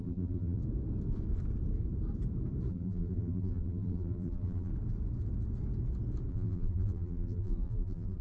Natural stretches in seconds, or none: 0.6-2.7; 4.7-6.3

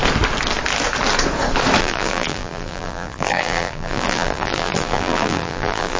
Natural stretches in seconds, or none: 0.0-1.8

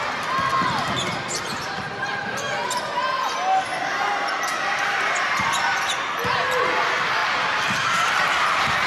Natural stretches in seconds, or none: 0.0-7.2

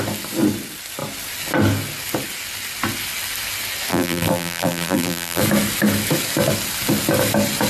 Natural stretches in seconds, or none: 0.0-3.9; 5.4-7.7

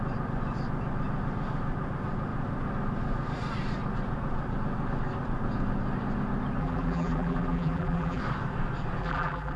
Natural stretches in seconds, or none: 0.0-6.6; 8.2-9.0

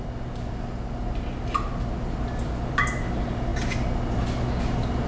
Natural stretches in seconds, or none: 0.0-5.1

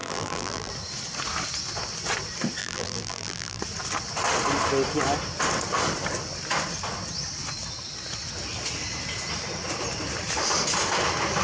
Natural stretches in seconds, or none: 0.7-2.6; 3.6-11.4